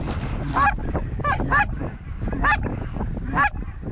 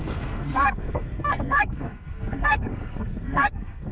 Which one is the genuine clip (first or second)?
first